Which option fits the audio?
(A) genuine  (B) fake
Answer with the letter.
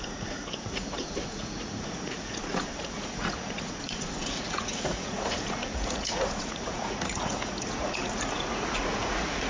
B